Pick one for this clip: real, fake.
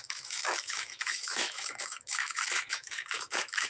fake